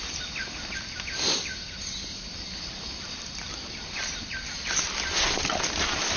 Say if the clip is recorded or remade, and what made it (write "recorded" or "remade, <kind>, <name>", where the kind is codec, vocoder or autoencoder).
recorded